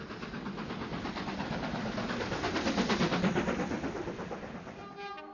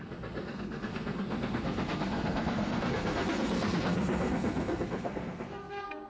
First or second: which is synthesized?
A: second